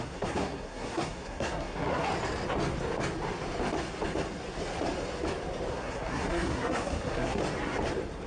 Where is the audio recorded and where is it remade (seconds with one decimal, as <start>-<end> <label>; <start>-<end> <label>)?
0.0-2.1 remade; 2.1-5.7 recorded; 5.7-7.4 remade; 7.4-8.3 recorded